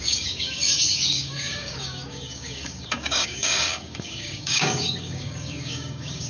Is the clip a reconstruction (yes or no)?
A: yes